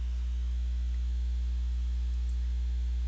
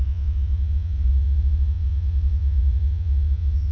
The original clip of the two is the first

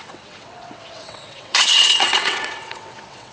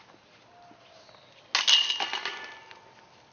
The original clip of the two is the second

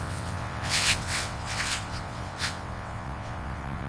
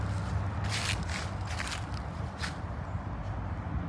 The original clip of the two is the second